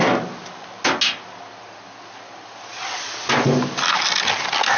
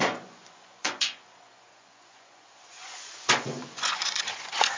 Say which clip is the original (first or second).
first